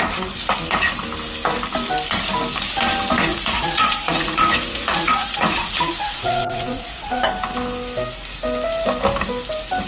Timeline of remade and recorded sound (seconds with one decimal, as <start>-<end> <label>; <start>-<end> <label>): 0.0-3.3 recorded; 3.3-7.2 remade; 7.2-9.9 recorded